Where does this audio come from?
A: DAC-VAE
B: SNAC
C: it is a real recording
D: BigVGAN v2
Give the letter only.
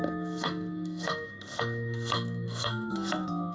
B